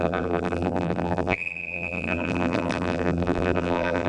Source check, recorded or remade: remade